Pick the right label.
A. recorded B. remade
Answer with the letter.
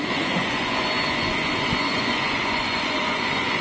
B